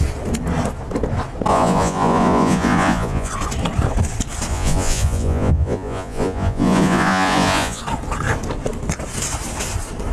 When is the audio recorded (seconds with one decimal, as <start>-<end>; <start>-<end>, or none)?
0.0-1.5; 3.3-4.5; 7.8-10.1